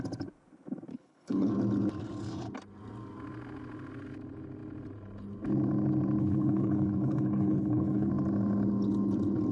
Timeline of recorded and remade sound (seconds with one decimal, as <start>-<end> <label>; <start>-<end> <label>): 0.0-0.9 recorded; 0.9-1.5 remade; 1.5-6.2 recorded; 6.2-8.1 remade; 8.1-9.5 recorded